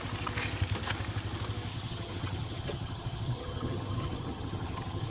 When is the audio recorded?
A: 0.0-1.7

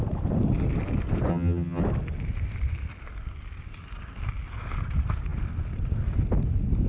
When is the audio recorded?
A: 0.0-1.3; 1.8-6.9

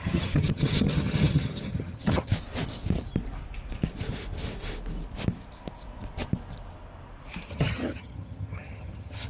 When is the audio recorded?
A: 2.3-7.5

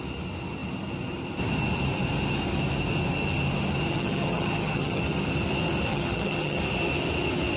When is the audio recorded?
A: 0.0-3.9; 5.0-5.9; 6.6-7.6

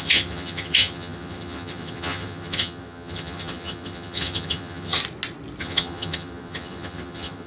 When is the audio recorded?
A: 5.0-5.6

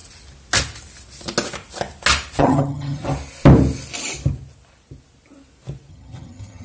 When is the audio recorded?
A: 0.0-2.4; 3.0-5.9

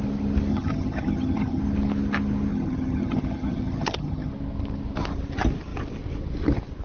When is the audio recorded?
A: 0.0-0.5; 1.6-2.5; 4.3-6.8